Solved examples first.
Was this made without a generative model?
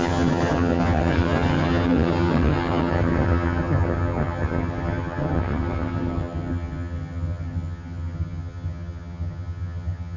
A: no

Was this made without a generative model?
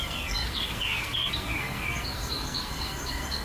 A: no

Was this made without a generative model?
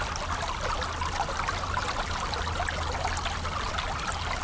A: yes